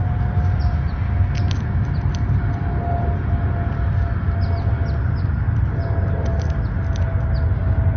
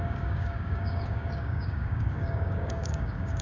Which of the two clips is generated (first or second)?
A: second